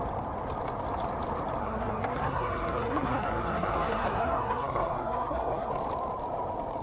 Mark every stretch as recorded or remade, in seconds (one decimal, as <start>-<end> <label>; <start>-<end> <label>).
0.0-1.6 recorded; 1.6-5.7 remade; 5.7-6.8 recorded